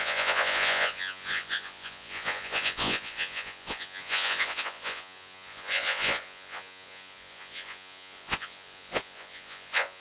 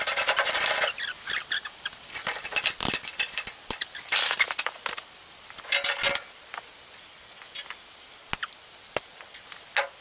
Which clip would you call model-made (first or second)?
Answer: first